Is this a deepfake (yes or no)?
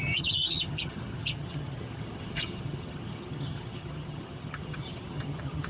yes